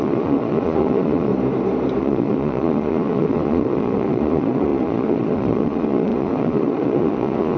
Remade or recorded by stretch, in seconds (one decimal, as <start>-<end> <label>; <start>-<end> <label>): 0.0-1.3 remade; 1.3-2.0 recorded; 2.0-7.6 remade